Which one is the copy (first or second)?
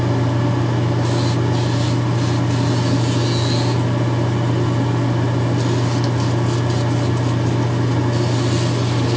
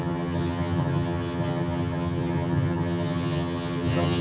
second